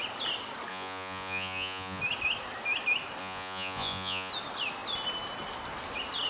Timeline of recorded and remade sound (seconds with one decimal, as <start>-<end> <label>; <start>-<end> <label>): 0.0-0.7 recorded; 0.7-2.0 remade; 2.0-3.2 recorded; 3.2-4.3 remade; 4.3-6.3 recorded